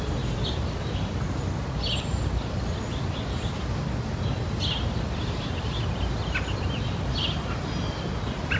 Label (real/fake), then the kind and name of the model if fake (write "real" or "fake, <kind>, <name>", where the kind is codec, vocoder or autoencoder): real